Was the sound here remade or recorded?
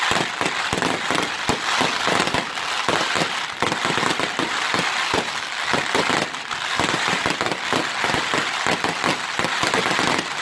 recorded